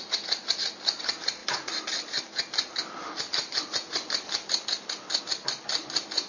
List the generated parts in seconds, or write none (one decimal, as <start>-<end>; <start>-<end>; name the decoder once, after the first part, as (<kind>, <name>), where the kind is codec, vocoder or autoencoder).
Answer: none